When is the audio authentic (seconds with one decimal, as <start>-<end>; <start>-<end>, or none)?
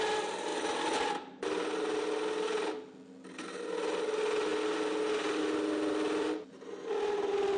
0.0-7.6